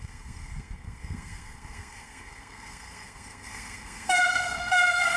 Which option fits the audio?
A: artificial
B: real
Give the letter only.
A